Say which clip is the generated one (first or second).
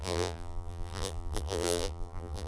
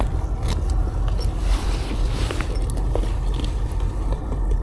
first